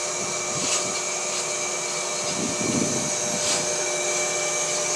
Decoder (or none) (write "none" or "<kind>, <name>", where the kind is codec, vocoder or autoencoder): none